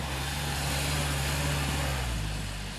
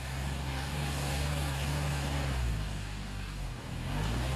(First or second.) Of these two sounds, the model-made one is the second